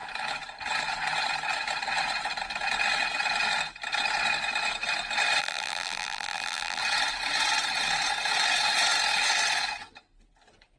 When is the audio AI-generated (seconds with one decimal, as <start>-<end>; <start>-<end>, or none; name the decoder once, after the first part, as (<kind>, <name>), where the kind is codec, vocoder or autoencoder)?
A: 5.4-6.8 (vocoder, BigVGAN v2)